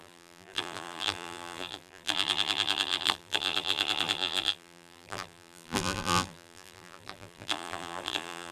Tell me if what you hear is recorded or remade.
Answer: remade